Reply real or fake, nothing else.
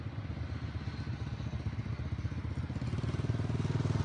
real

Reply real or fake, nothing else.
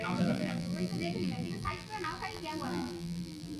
fake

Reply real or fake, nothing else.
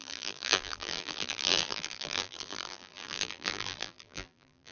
fake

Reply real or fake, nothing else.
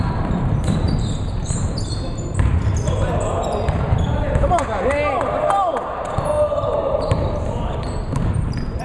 fake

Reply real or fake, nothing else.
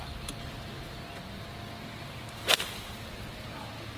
real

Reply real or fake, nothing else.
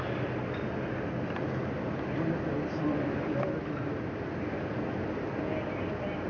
real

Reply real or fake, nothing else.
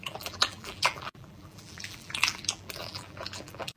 fake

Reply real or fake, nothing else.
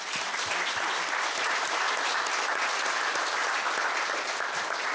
real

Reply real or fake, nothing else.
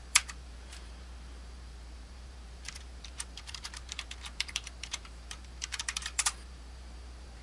fake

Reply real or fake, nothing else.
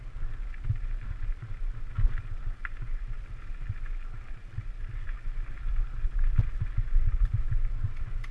real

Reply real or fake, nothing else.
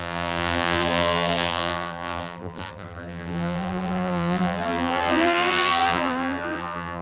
fake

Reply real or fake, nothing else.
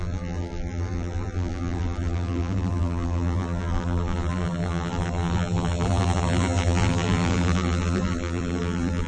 fake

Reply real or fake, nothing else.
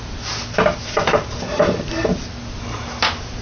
fake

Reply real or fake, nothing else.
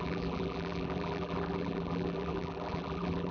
fake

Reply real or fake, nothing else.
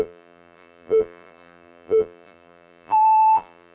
fake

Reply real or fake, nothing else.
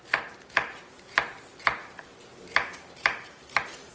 real